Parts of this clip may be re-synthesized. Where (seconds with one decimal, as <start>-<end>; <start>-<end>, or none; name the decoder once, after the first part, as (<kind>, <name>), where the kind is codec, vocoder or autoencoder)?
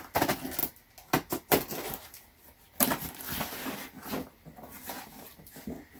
none